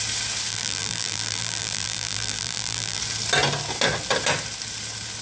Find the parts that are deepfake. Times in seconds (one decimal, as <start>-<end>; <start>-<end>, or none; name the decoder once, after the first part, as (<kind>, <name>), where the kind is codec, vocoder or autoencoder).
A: 0.5-3.0 (vocoder, BigVGAN v2)